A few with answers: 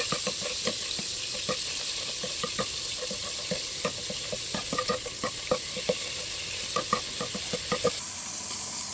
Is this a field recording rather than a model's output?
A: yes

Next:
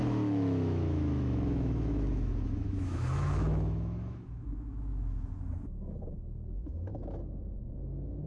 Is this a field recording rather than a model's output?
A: no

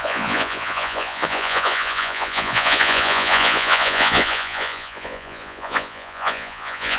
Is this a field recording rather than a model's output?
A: no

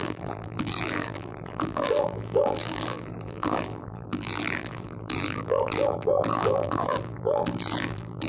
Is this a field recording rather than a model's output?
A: no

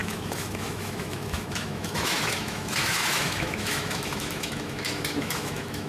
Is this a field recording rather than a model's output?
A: no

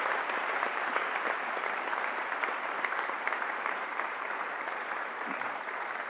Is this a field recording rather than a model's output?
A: no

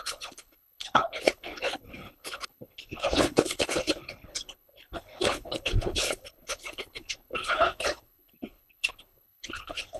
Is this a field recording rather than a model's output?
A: no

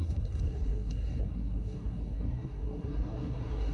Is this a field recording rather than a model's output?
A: no